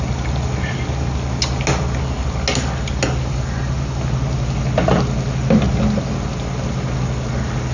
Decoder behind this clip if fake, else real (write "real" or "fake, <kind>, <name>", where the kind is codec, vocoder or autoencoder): real